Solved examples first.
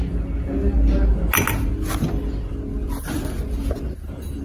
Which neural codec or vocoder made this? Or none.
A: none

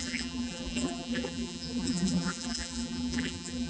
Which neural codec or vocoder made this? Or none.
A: vocoder, BigVGAN v2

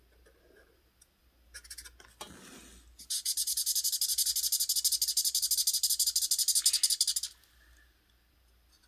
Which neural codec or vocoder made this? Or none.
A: none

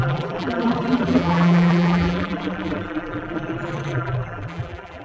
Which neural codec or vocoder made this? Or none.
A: vocoder, BigVGAN v2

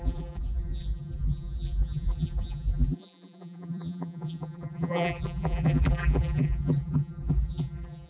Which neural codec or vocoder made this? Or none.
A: vocoder, BigVGAN v2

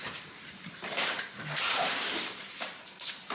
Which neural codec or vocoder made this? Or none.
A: vocoder, BigVGAN v2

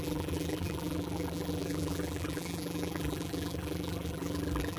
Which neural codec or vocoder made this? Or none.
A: vocoder, BigVGAN v2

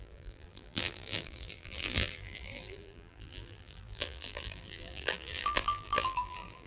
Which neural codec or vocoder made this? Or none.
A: vocoder, BigVGAN v2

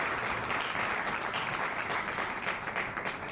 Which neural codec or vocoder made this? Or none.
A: none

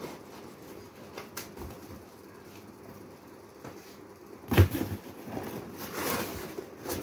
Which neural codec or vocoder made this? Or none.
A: none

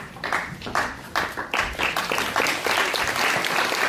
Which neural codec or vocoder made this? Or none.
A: vocoder, BigVGAN v2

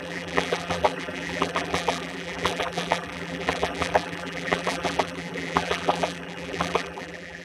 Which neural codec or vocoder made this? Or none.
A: vocoder, BigVGAN v2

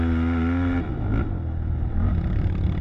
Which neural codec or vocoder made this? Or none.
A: none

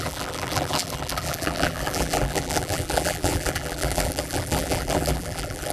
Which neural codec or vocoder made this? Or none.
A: vocoder, BigVGAN v2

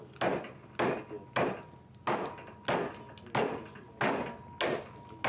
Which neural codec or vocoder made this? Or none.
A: none